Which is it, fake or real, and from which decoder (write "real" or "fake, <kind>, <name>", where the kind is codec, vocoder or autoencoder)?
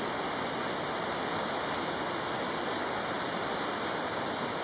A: real